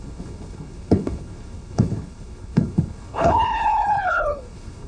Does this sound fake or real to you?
fake